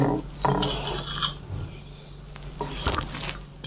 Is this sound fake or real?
real